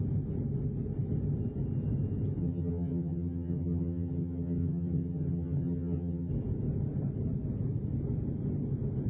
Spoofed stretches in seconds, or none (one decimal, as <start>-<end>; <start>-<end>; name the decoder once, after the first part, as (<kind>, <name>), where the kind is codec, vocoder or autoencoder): 2.4-6.3 (vocoder, HiFi-GAN)